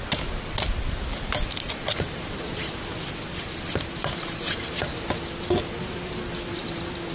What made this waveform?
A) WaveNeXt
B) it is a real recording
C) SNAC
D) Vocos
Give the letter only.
B